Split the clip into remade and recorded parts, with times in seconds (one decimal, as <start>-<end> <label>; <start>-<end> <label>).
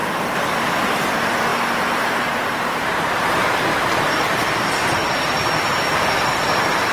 0.0-0.6 recorded; 0.6-1.5 remade; 1.5-2.1 recorded; 2.1-5.0 remade; 5.0-6.9 recorded